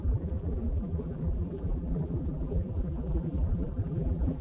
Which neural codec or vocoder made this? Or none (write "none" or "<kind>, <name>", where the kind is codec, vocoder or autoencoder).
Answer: vocoder, BigVGAN v2